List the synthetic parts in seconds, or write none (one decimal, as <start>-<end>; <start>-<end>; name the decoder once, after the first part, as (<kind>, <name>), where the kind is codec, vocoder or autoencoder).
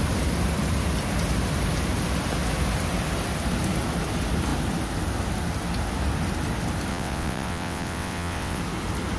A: 6.9-8.6 (vocoder, WaveNeXt)